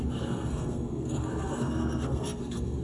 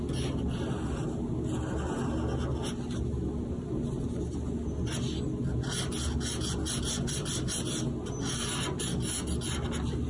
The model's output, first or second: first